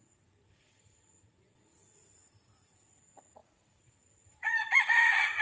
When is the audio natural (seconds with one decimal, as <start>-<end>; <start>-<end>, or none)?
none